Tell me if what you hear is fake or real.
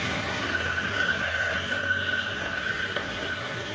fake